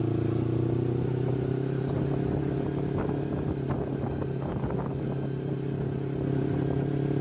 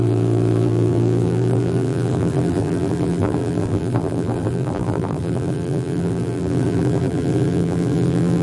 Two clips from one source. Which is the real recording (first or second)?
first